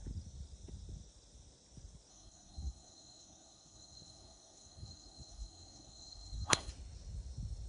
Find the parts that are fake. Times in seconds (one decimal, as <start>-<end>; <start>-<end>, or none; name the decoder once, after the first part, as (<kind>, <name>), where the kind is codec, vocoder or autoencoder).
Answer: 2.1-6.7 (codec, SNAC)